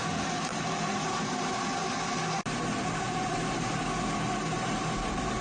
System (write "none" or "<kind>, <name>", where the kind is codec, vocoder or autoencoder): none